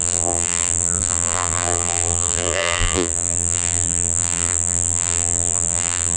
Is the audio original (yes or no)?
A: no